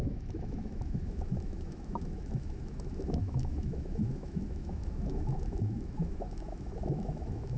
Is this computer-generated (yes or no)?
yes